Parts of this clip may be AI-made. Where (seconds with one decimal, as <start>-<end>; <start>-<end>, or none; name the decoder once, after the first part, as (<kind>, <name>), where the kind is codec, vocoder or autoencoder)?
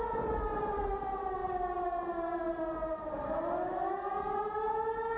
none